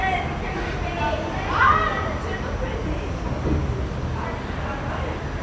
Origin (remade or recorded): recorded